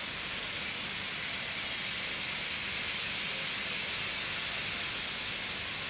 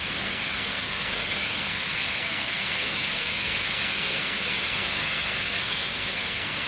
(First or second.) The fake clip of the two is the second